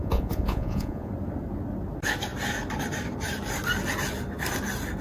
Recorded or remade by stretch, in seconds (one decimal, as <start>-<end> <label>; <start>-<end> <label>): 0.0-1.1 remade; 1.1-5.0 recorded